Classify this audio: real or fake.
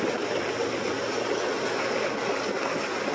real